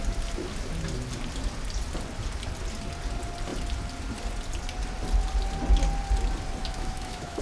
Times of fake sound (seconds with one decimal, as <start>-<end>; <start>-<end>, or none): 6.6-7.4